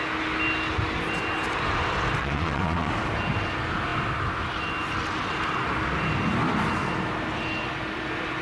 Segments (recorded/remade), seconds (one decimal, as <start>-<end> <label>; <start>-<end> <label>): 0.0-2.2 recorded; 2.2-2.9 remade; 2.9-8.4 recorded